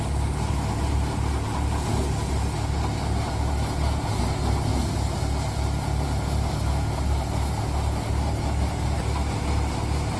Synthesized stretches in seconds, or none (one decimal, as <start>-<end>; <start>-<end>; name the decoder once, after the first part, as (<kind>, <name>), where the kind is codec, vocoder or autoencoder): none